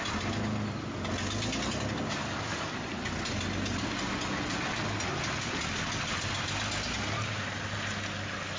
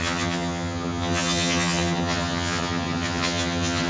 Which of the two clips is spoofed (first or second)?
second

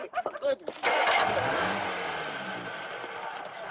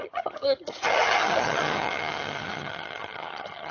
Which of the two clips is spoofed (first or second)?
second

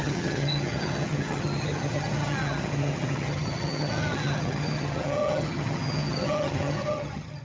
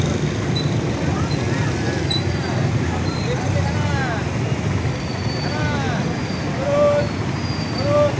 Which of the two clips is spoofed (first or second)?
first